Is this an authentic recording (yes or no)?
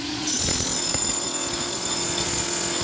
no